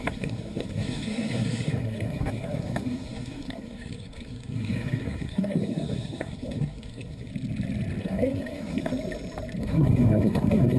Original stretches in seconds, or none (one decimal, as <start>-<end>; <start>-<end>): 7.3-8.0; 8.9-9.6